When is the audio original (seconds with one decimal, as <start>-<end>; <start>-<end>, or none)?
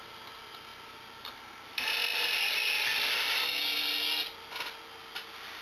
0.0-5.6